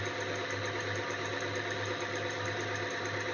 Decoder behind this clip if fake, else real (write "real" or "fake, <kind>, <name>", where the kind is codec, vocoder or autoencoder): real